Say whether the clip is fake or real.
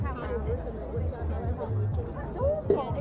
real